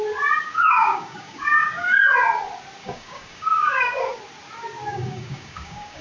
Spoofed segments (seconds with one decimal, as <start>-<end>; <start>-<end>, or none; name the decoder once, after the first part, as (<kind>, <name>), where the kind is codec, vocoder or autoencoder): 0.5-2.0 (codec, DAC); 2.8-4.2; 4.9-6.0